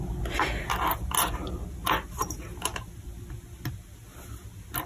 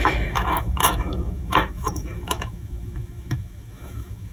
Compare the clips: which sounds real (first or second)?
first